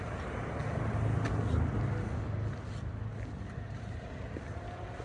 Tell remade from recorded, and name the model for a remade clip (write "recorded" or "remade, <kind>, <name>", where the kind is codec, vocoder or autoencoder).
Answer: recorded